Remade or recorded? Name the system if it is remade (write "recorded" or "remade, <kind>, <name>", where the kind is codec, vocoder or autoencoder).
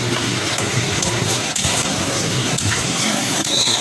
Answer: remade, codec, SNAC